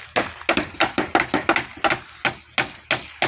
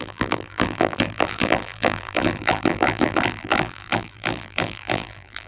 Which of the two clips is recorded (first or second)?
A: first